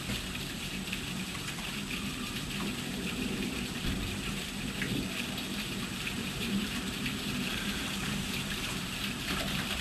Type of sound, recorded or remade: remade